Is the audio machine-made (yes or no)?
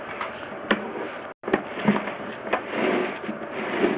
no